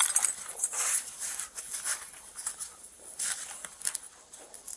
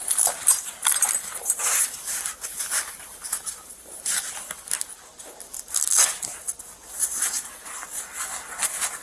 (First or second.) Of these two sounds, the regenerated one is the first